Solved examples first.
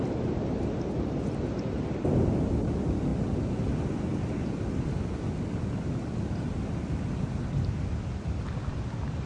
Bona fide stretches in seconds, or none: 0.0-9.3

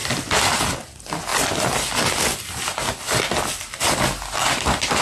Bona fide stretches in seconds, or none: 0.0-5.0

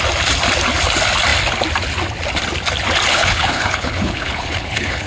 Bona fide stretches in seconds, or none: 0.0-3.1

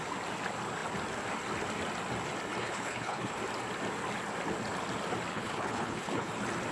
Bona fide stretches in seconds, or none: 0.0-2.6; 3.4-5.3; 6.3-6.7

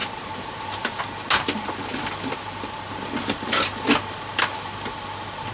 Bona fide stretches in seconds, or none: 0.0-5.5

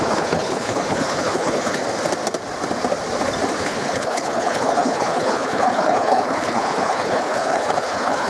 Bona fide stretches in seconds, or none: 1.8-3.6

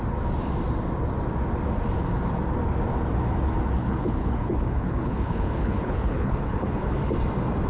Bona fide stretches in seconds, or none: 0.0-3.8; 6.9-7.7

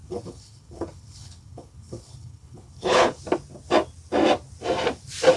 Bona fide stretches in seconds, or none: 3.2-5.4